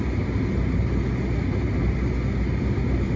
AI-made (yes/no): no